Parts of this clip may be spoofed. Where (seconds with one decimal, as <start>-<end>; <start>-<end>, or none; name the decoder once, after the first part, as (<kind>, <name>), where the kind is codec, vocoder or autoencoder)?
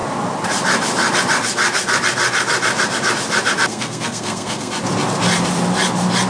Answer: 3.7-4.7 (codec, SNAC)